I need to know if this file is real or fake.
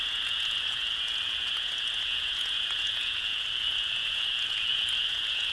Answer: fake